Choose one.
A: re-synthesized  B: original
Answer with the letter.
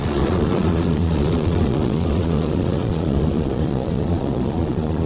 A